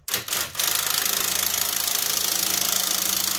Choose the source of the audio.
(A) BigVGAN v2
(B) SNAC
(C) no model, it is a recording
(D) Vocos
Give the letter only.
C